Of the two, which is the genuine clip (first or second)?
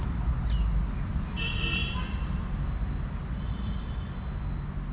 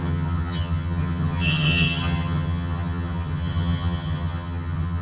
first